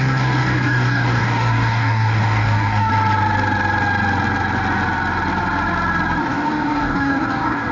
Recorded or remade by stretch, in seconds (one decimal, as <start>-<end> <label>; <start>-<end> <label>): 0.0-2.9 remade; 2.9-6.2 recorded; 6.2-7.7 remade